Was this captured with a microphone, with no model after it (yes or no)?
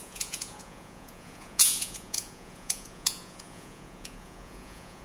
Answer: no